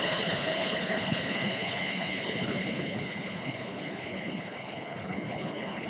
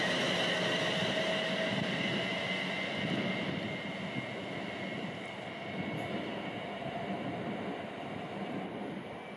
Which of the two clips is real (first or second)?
second